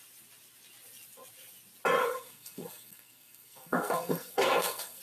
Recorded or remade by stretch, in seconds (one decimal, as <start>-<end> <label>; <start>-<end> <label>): 0.0-2.0 recorded; 2.0-5.0 remade